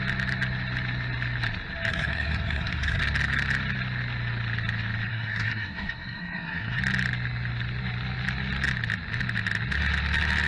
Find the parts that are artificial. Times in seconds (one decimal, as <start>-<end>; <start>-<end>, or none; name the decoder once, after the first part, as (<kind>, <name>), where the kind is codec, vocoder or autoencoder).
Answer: 1.9-3.0 (codec, SNAC); 5.1-6.8